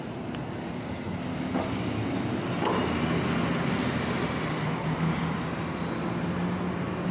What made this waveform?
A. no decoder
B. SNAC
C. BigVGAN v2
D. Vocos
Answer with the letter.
A